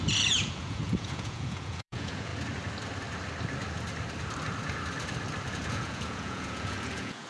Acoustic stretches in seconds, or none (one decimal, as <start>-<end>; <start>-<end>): 2.3-5.5